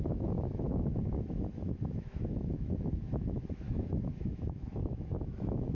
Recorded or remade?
remade